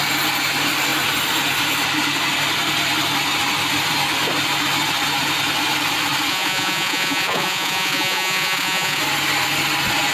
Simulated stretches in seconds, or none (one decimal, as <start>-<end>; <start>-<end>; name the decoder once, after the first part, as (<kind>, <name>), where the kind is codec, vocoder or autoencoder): 6.3-9.0 (vocoder, Vocos)